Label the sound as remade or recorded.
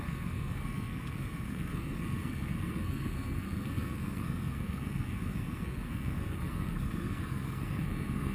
remade